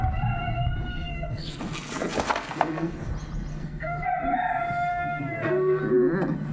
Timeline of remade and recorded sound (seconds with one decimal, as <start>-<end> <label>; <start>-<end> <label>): 0.0-0.9 recorded; 0.9-1.6 remade; 1.6-2.3 recorded; 2.3-3.1 remade; 3.1-3.5 recorded; 3.5-4.1 remade; 4.1-4.9 recorded; 4.9-5.8 remade; 5.8-6.5 recorded